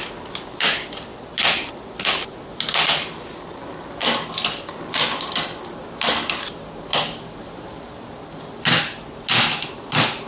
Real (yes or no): yes